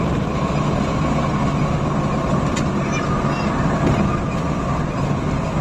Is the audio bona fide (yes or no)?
yes